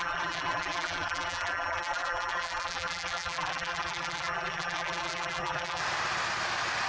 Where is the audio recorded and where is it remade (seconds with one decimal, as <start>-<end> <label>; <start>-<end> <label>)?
0.0-5.8 remade; 5.8-6.9 recorded